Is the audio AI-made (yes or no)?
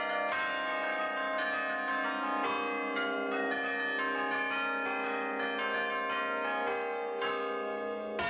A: no